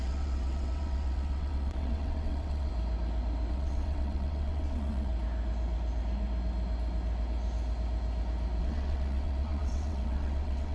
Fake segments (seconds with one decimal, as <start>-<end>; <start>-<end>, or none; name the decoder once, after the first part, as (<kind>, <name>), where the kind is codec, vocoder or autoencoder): 0.0-2.7 (vocoder, WaveNeXt); 3.5-5.1; 8.6-10.7